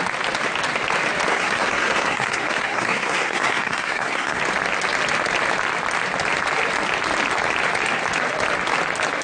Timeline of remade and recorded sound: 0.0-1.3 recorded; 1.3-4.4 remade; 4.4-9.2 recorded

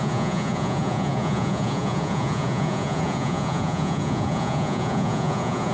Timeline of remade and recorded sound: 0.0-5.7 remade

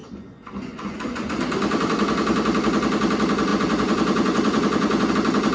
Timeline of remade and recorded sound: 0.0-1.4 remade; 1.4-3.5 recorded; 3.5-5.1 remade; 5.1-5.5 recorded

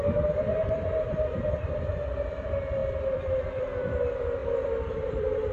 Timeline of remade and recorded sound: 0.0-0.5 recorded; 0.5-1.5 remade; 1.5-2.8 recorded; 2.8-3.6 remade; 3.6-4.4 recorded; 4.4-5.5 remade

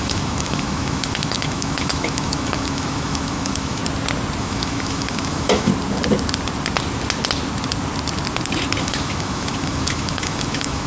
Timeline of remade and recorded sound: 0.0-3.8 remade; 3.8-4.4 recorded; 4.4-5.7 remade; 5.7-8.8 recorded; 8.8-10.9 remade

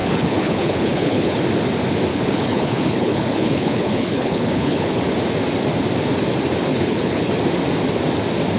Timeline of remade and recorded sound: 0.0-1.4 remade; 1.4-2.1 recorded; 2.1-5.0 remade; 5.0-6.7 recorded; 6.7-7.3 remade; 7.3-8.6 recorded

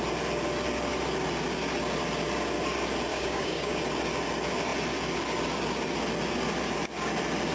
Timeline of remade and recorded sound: 0.0-3.1 recorded; 3.1-3.8 remade; 3.8-7.5 recorded

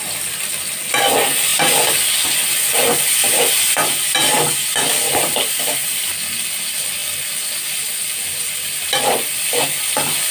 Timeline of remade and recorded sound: 0.0-10.3 recorded